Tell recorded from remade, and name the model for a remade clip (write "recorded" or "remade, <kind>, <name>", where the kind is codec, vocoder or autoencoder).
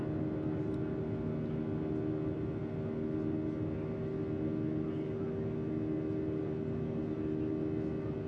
recorded